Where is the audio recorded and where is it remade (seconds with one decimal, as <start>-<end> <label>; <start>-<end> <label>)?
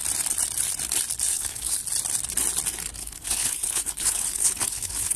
0.0-1.3 recorded; 1.3-1.8 remade; 1.8-3.0 recorded; 3.0-5.2 remade